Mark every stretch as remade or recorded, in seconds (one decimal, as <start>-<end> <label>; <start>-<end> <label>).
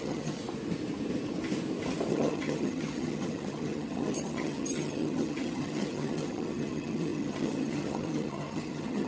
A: 0.0-0.4 remade; 0.4-2.1 recorded; 2.1-9.1 remade